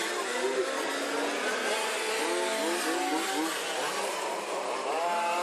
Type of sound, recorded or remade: recorded